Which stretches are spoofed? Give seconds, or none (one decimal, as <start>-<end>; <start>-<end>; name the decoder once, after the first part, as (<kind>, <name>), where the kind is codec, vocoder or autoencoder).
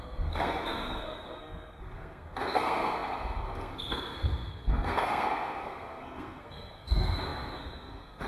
0.0-8.3 (codec, SNAC)